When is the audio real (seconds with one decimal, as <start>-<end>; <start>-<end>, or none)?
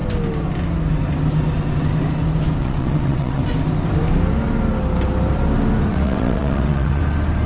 0.0-2.6; 3.4-5.9; 7.0-7.5